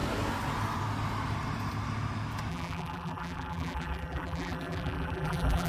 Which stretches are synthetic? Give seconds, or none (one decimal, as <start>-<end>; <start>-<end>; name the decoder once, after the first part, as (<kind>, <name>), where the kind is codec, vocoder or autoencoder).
2.5-5.7 (vocoder, BigVGAN v2)